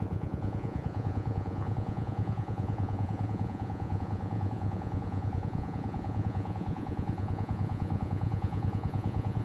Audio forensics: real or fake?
fake